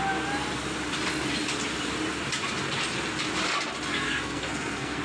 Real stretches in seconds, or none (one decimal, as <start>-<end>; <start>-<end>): 0.0-3.9